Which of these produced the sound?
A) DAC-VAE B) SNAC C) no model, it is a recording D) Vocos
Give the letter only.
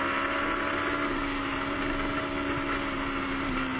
C